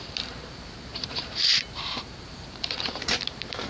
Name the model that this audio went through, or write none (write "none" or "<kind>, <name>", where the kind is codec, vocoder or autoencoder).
vocoder, BigVGAN v2